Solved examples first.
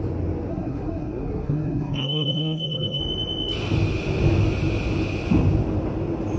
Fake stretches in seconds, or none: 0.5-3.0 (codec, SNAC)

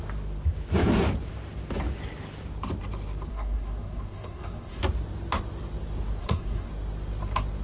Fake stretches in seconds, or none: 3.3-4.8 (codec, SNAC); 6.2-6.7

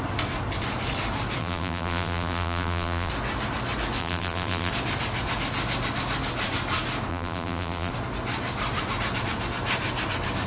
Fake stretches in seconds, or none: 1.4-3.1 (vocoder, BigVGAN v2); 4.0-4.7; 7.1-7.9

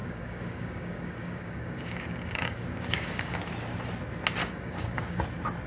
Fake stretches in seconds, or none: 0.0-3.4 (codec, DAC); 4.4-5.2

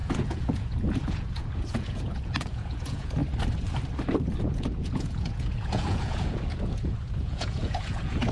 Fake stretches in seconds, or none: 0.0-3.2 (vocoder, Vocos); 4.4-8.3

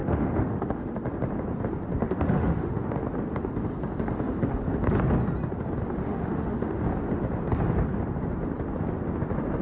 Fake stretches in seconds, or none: 0.0-0.9 (autoencoder, DAC-VAE); 2.0-3.0; 6.0-6.8